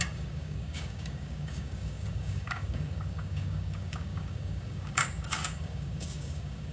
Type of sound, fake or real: fake